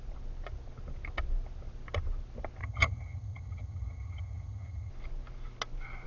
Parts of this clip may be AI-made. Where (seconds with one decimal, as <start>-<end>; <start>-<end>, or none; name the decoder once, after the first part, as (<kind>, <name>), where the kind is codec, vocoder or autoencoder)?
2.6-4.9 (vocoder, HiFi-GAN)